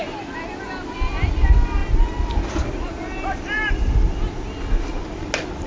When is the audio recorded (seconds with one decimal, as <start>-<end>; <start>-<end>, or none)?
0.0-1.8; 5.2-5.7